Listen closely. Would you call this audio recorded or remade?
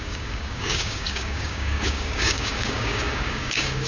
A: remade